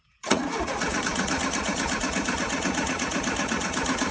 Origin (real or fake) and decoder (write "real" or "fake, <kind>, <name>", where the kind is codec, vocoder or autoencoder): fake, vocoder, Vocos